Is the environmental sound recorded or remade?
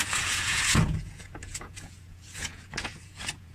remade